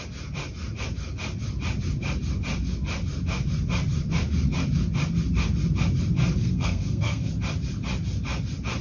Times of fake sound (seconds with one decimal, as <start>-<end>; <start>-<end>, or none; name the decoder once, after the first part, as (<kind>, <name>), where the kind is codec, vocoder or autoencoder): 6.4-7.3 (codec, SNAC)